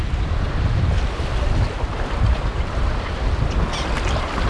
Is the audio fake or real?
real